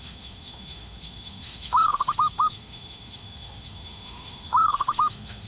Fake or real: fake